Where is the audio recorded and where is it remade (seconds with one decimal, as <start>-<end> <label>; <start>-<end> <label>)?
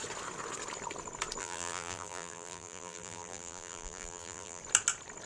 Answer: 0.0-1.4 recorded; 1.4-4.6 remade; 4.6-5.3 recorded